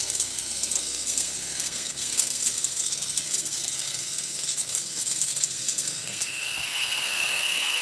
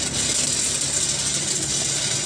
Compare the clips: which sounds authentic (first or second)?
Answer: second